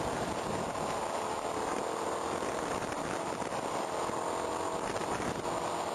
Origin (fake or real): real